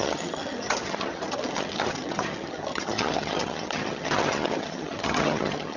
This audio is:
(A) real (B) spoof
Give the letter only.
B